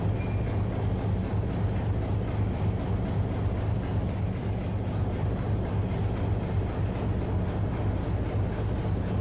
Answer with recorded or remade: recorded